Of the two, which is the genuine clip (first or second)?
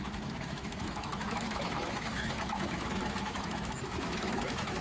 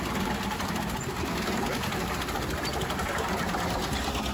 second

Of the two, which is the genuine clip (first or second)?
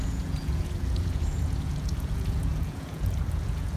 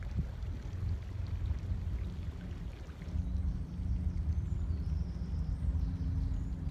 second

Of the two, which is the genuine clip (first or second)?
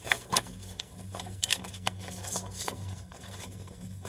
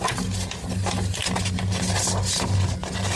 second